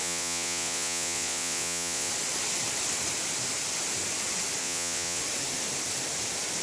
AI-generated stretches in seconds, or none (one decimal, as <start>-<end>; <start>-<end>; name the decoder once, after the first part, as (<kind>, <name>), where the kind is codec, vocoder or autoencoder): 0.0-2.1 (vocoder, Vocos); 4.6-5.2

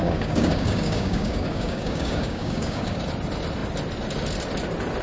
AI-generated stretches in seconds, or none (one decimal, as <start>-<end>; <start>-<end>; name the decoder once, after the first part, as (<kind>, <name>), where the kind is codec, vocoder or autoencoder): 0.0-3.0 (codec, DAC)

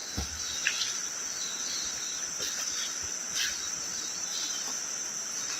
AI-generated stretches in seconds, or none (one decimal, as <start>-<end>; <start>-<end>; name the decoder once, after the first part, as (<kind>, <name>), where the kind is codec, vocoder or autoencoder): 4.3-5.1 (vocoder, BigVGAN v2)